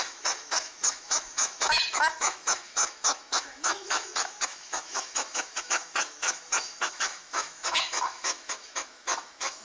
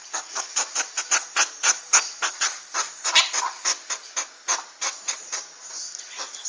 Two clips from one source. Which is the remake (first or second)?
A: first